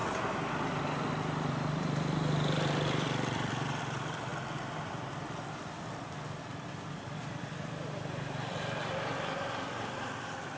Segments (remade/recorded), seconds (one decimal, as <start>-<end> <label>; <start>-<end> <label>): 0.0-0.5 recorded; 0.5-4.3 remade; 4.3-4.9 recorded; 4.9-10.6 remade